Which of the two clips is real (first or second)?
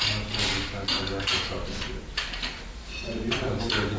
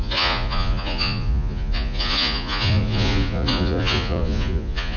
first